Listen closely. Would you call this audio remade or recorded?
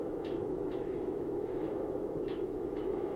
remade